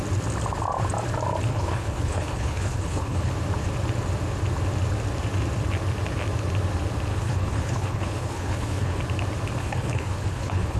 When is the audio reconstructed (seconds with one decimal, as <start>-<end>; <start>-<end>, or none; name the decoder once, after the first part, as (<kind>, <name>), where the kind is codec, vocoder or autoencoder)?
1.5-3.3 (codec, HILCodec); 7.1-9.0; 9.6-10.8